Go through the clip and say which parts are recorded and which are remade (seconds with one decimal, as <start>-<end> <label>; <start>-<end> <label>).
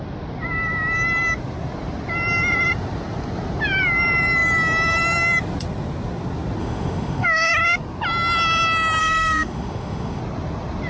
0.0-6.6 recorded; 6.6-7.5 remade; 7.5-9.0 recorded; 9.0-10.2 remade; 10.2-10.9 recorded